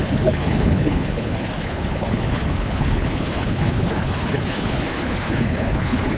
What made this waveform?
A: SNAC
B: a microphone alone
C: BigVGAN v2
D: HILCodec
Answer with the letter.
D